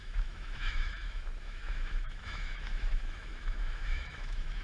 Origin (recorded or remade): remade